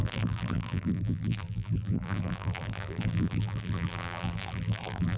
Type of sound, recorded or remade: remade